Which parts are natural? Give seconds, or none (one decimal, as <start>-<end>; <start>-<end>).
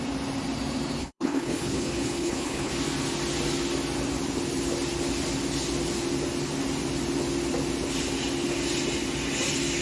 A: 0.0-1.0; 2.7-9.8